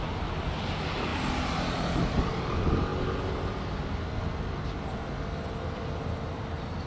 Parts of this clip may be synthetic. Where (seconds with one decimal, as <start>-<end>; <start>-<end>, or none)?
1.1-2.4